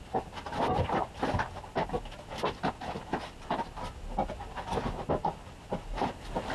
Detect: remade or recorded recorded